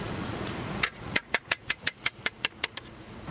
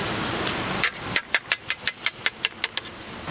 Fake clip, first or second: first